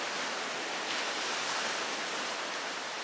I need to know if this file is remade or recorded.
recorded